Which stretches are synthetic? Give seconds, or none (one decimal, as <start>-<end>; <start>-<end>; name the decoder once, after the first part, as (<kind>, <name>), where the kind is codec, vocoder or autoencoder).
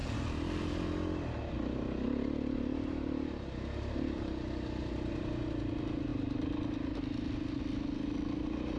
none